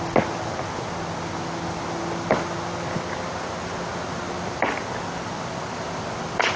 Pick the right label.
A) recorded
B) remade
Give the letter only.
A